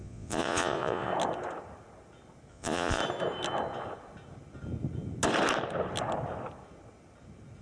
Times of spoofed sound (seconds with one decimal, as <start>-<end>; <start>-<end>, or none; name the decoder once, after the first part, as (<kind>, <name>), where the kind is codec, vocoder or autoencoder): 0.0-1.1 (vocoder, Vocos); 2.5-3.0